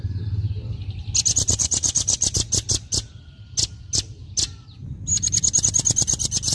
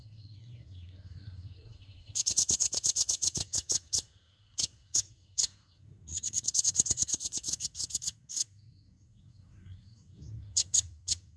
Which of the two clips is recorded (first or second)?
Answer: first